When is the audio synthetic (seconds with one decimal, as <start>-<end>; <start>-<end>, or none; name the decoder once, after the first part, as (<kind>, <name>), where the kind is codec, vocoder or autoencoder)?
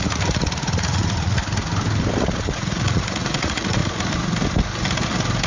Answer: 0.0-1.4 (vocoder, Vocos); 2.2-3.8